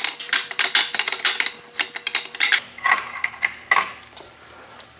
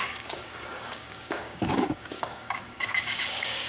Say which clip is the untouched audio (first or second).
first